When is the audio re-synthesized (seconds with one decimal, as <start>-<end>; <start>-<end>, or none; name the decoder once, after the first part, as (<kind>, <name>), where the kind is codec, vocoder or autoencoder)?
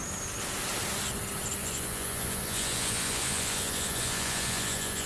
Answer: 1.6-5.1 (vocoder, Vocos)